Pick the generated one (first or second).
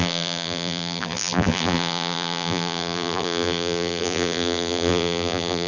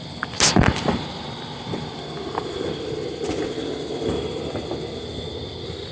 first